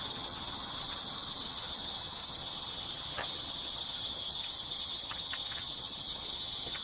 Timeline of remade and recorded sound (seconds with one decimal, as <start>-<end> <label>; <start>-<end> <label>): 0.0-6.8 remade